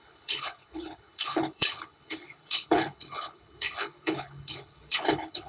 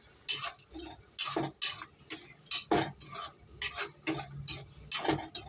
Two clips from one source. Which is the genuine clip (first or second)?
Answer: second